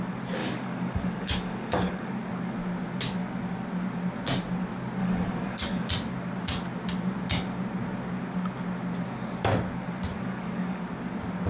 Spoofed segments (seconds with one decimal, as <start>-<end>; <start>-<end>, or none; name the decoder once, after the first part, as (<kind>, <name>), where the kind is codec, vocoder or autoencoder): 0.4-2.1 (codec, DAC); 5.0-5.9; 10.2-10.8